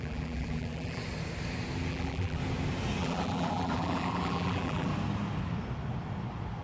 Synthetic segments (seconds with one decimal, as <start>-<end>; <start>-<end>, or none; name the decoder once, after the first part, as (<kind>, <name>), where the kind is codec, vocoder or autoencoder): 0.0-1.0 (vocoder, BigVGAN v2); 1.9-2.4; 3.0-4.9